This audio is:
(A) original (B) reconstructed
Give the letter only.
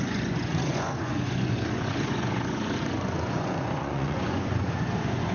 B